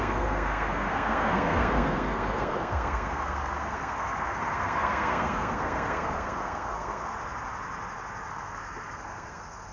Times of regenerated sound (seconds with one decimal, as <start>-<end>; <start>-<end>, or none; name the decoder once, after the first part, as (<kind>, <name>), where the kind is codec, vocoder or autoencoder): 0.0-7.1 (codec, SNAC); 8.3-9.7